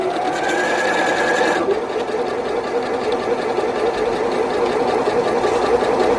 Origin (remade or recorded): recorded